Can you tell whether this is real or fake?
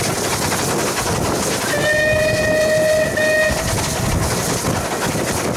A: real